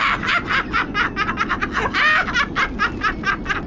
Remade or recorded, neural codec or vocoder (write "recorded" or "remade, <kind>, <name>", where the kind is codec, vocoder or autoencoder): recorded